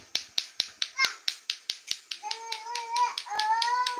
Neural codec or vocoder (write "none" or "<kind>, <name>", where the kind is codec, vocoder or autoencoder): none